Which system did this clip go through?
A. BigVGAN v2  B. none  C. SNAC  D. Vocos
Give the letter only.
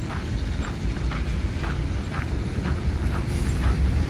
A